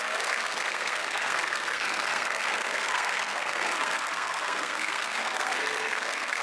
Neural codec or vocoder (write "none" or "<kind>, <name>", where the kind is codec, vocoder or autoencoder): codec, SNAC